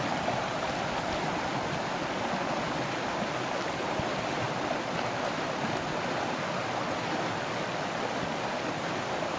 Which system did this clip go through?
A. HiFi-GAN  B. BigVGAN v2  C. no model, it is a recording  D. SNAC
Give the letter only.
C